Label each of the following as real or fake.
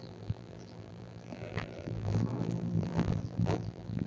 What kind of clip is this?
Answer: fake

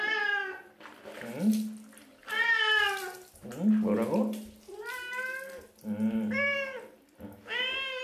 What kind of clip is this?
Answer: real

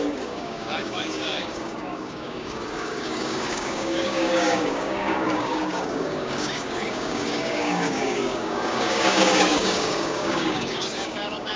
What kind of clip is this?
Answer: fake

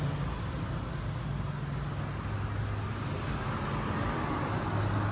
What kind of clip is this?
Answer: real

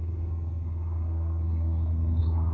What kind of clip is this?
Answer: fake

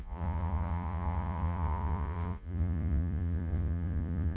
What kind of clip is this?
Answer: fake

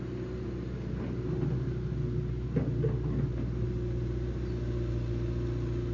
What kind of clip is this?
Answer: real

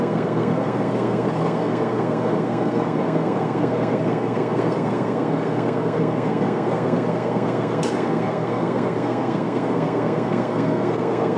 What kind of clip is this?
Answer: fake